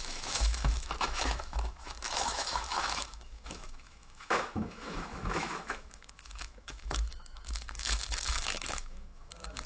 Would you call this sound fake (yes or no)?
yes